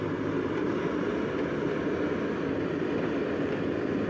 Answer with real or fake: real